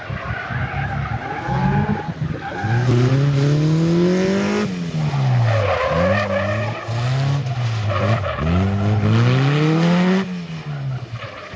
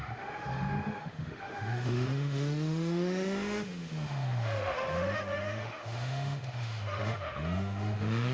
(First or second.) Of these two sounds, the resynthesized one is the second